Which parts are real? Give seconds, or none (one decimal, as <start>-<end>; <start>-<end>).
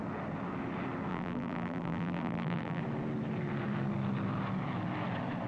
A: 0.0-1.1; 2.8-5.5